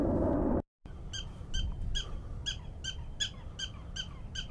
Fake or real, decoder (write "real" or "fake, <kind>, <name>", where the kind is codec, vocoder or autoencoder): real